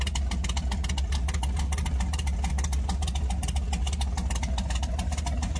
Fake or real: real